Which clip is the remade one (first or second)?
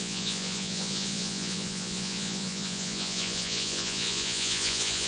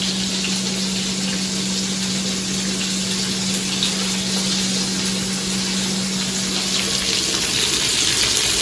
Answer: first